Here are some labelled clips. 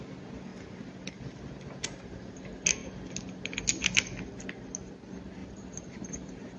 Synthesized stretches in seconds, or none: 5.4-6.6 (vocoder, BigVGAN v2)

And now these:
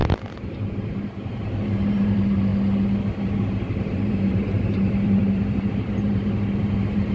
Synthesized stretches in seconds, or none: 0.7-2.5 (vocoder, BigVGAN v2); 3.2-7.1

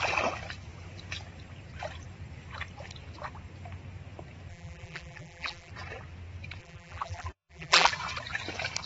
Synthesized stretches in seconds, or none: 4.5-5.7 (vocoder, BigVGAN v2); 6.6-7.9

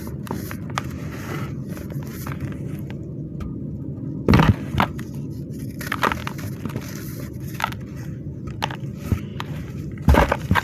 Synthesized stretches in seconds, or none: 9.3-10.6 (vocoder, BigVGAN v2)

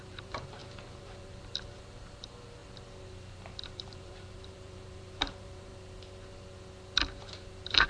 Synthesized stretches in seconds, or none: 0.0-2.6 (vocoder, BigVGAN v2); 3.6-5.7; 7.1-7.9

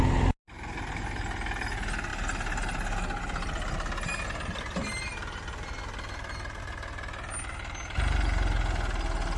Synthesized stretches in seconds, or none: none

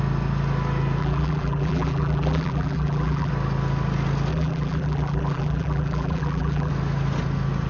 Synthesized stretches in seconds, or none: 1.0-3.3 (vocoder, BigVGAN v2); 4.3-6.7

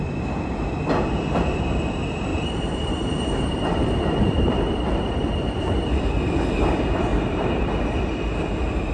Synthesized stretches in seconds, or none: 2.3-6.1 (vocoder, BigVGAN v2); 7.1-8.0